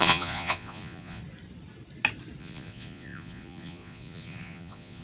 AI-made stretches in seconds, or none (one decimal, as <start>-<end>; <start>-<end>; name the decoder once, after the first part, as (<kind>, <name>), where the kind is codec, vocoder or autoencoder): 0.0-1.2 (vocoder, Vocos); 2.4-5.0